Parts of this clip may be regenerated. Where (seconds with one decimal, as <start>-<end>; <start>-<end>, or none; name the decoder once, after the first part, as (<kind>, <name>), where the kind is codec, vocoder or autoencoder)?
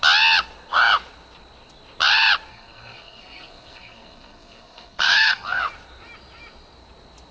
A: 2.5-5.6 (codec, SNAC)